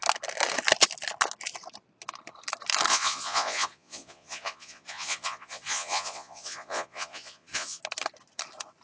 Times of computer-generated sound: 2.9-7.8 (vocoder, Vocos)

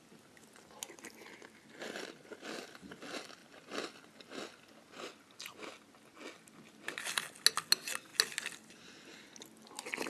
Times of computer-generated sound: none

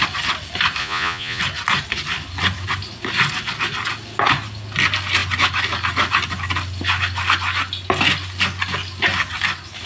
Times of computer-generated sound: 0.8-1.4 (vocoder, Vocos)

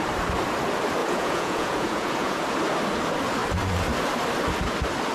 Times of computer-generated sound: 1.0-2.4 (vocoder, Vocos)